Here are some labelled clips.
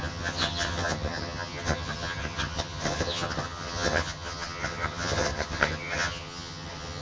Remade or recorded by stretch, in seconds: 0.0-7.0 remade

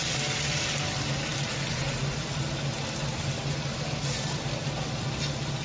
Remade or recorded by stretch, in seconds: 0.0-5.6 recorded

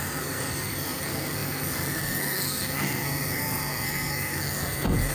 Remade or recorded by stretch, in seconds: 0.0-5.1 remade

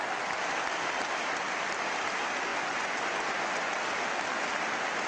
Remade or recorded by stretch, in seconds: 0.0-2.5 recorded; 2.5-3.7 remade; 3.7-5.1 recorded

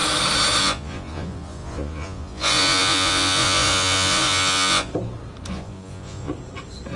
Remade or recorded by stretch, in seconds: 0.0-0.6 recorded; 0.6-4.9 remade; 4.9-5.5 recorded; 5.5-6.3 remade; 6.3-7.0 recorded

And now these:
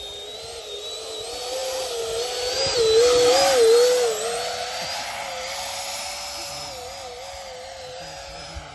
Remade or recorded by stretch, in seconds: 0.0-8.7 recorded